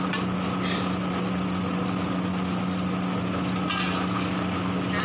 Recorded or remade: recorded